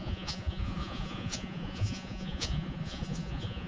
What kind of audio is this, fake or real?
fake